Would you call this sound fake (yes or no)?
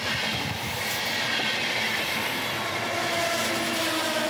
no